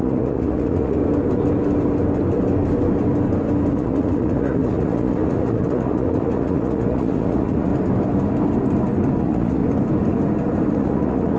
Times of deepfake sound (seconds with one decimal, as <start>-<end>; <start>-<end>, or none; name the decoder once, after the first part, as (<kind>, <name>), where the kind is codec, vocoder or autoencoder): 0.0-1.0 (vocoder, Vocos); 3.7-7.7; 9.2-9.6; 10.7-11.4